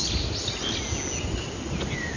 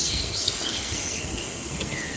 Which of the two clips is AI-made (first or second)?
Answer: second